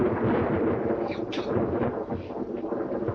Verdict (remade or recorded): remade